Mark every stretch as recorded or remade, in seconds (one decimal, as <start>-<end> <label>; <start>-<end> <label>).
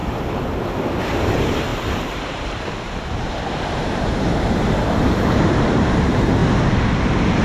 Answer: 0.0-1.0 recorded; 1.0-6.4 remade; 6.4-7.4 recorded